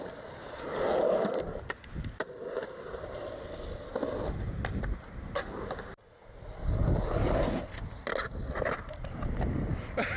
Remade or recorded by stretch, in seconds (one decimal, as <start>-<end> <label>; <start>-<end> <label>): 0.0-10.2 recorded